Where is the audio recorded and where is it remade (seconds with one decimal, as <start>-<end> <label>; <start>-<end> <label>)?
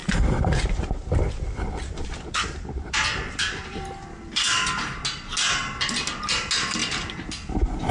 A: 0.0-4.7 remade; 4.7-6.8 recorded; 6.8-7.9 remade